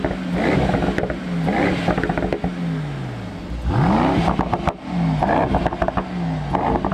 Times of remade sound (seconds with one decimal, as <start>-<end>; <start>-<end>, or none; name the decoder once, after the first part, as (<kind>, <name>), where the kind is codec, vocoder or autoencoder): none